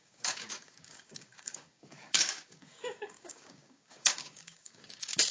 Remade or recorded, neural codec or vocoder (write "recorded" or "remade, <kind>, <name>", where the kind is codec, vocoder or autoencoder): remade, codec, DAC